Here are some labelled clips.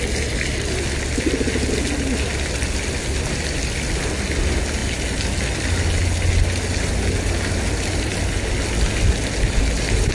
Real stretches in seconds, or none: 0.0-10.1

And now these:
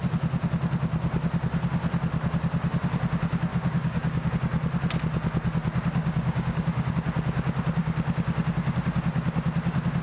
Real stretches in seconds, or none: 0.0-3.5; 4.3-6.0; 6.9-10.0

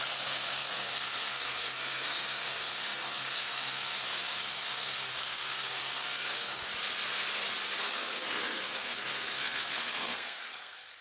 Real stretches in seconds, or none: 6.7-7.8